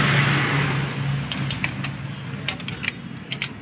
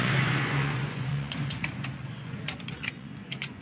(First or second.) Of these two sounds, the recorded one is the first